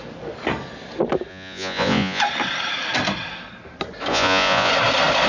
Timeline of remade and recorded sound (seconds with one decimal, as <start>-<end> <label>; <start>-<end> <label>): 0.0-1.3 recorded; 1.3-2.2 remade; 2.2-4.1 recorded; 4.1-4.7 remade; 4.7-5.3 recorded